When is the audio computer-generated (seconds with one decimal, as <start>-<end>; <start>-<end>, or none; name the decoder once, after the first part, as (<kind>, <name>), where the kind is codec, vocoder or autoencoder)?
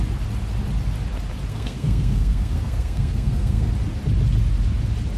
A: 1.5-3.7 (codec, SNAC)